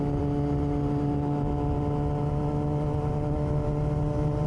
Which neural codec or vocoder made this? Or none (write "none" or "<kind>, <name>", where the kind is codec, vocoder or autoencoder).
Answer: none